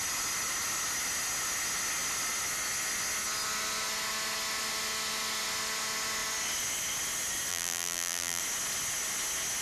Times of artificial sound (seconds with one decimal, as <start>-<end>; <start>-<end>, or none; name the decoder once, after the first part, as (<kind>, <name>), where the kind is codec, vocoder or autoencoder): 7.5-8.4 (vocoder, BigVGAN v2)